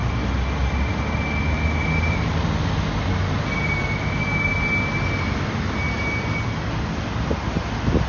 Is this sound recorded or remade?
recorded